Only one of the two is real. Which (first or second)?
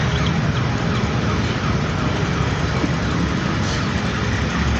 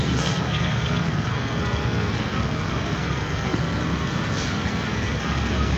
first